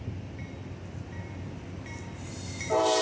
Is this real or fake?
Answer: real